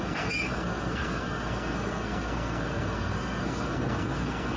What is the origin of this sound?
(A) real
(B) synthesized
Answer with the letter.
B